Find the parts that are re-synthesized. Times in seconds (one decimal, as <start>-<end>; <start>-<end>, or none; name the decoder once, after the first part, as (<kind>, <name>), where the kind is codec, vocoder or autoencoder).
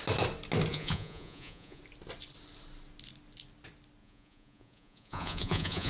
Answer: 0.7-1.8 (vocoder, Vocos); 4.0-5.9